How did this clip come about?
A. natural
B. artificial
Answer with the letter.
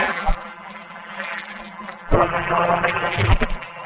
B